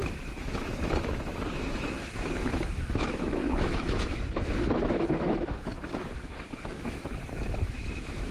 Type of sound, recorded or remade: remade